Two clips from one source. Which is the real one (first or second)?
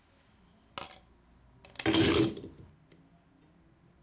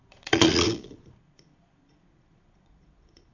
first